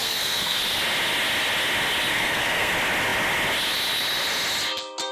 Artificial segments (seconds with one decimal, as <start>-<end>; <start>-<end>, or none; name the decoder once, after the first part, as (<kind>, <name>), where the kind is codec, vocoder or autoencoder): 0.0-0.6 (codec, SNAC); 2.1-2.7